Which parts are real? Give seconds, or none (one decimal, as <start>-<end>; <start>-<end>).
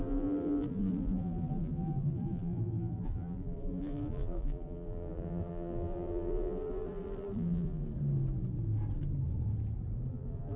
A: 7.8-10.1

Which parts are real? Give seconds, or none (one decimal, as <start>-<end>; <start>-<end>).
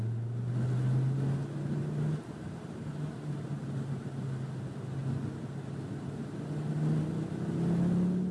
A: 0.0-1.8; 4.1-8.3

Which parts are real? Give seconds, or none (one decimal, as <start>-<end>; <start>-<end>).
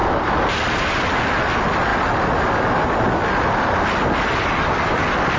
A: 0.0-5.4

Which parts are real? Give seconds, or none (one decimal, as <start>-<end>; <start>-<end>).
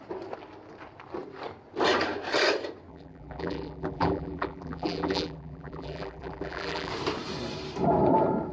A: 0.0-2.9; 6.9-8.5